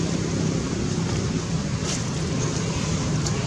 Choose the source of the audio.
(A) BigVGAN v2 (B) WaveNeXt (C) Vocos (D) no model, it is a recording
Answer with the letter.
D